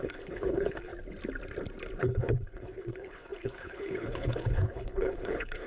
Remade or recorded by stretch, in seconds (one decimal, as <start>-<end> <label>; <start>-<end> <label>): 0.0-0.9 remade; 0.9-2.0 recorded; 2.0-5.7 remade